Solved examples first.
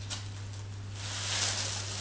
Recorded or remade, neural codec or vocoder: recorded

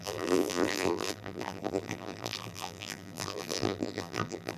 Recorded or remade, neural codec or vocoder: remade, vocoder, BigVGAN v2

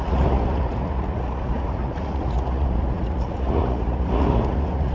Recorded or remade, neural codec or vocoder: remade, vocoder, Vocos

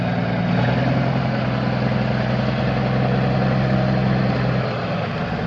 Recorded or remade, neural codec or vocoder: recorded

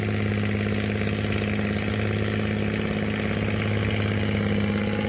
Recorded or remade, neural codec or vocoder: recorded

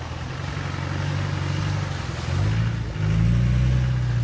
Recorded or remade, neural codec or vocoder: recorded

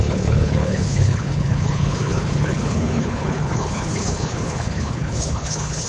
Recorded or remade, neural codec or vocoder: remade, codec, HILCodec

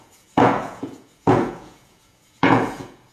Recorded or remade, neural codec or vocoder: remade, vocoder, Vocos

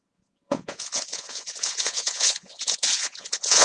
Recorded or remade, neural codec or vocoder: remade, vocoder, Vocos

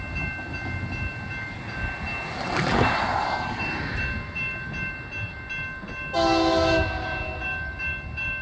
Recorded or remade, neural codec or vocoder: recorded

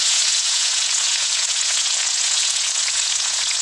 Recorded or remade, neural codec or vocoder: remade, vocoder, Vocos